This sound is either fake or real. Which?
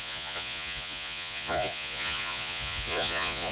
fake